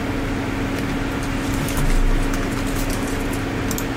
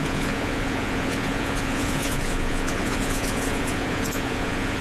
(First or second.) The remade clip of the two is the second